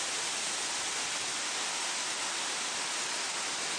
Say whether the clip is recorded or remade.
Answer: recorded